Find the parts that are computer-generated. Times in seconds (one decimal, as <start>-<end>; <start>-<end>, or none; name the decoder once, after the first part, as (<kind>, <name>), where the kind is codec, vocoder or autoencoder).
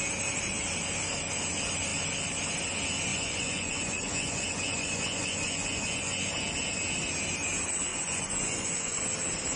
3.1-6.3 (vocoder, Vocos); 7.9-9.0